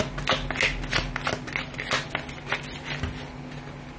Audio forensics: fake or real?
real